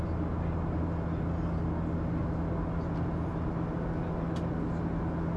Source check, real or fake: real